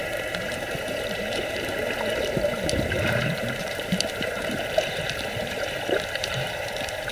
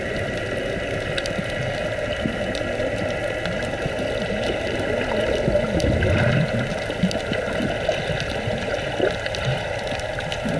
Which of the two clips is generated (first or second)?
first